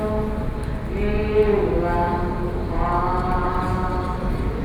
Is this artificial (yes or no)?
no